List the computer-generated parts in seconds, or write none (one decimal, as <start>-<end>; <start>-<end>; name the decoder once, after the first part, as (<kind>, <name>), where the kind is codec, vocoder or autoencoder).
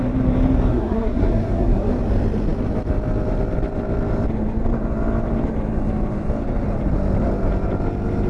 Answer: 0.7-1.9 (codec, SNAC)